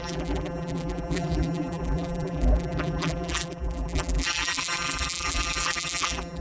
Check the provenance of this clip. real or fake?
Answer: fake